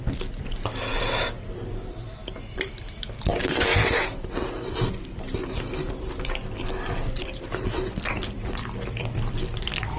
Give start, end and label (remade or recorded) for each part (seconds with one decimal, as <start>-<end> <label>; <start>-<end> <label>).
0.0-3.7 remade; 3.7-8.0 recorded; 8.0-10.0 remade